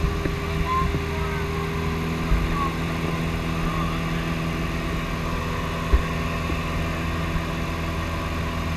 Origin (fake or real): real